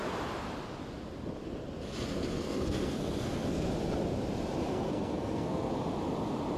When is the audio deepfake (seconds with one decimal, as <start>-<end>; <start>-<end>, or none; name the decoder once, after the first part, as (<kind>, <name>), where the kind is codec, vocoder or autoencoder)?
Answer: 2.3-3.7 (codec, SNAC); 4.7-5.7

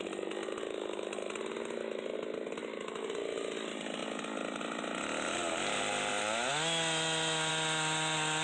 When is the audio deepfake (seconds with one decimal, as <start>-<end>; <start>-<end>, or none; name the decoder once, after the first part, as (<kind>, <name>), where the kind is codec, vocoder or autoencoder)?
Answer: none